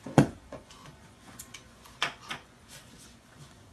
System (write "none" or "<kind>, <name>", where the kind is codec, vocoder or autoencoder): vocoder, Vocos